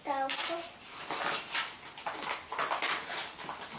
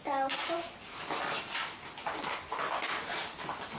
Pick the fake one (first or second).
first